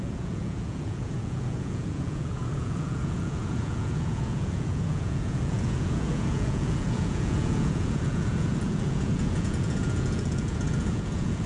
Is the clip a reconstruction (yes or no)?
yes